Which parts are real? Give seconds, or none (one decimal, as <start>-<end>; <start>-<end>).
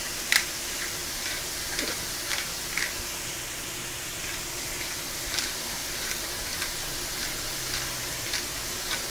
1.0-3.9; 5.8-9.1